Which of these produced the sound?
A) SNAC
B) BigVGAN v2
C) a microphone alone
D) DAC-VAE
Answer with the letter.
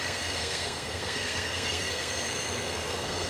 A